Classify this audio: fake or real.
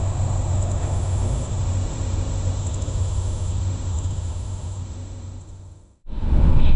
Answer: fake